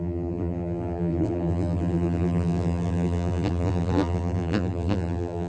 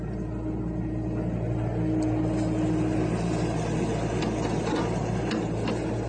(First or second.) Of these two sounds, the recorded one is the second